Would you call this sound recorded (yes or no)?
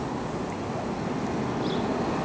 yes